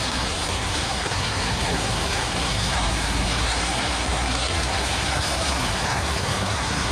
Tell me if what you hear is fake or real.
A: fake